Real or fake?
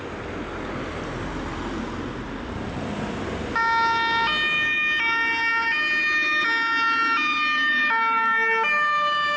real